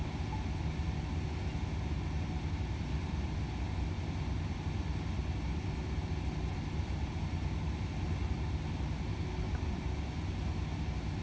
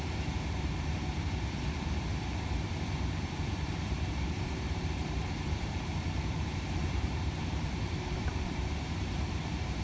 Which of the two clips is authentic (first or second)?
first